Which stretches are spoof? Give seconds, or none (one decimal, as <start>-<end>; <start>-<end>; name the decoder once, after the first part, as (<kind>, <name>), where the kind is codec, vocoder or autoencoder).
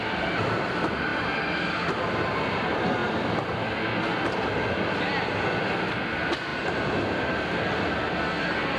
none